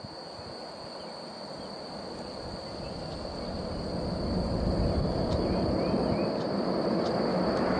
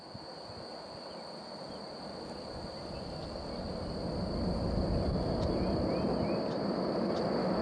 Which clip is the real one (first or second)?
second